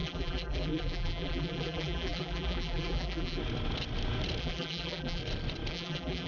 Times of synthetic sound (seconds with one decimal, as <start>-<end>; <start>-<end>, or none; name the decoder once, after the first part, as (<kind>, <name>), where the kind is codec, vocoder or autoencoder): 0.0-3.4 (vocoder, BigVGAN v2); 4.4-5.2; 5.7-6.3